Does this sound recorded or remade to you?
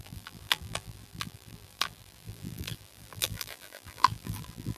remade